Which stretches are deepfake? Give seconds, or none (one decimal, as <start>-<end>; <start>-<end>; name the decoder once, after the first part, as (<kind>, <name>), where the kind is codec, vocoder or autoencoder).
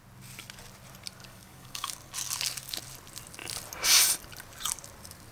1.2-1.9 (codec, DAC)